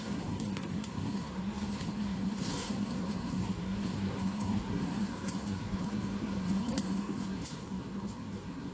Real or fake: fake